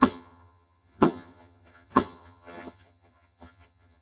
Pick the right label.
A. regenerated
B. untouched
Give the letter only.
A